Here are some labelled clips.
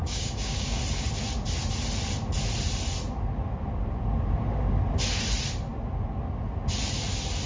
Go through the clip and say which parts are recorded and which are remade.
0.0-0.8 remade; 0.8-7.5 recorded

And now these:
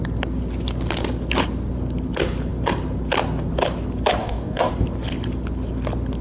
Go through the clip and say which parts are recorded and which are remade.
0.0-4.2 recorded; 4.2-4.7 remade; 4.7-6.2 recorded

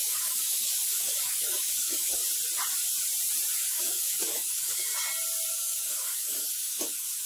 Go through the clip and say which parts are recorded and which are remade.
0.0-2.2 remade; 2.2-3.6 recorded; 3.6-4.9 remade; 4.9-5.5 recorded; 5.5-7.3 remade